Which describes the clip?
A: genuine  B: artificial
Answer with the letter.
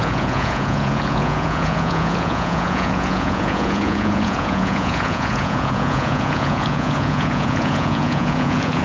B